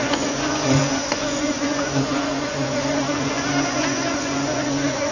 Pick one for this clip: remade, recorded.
remade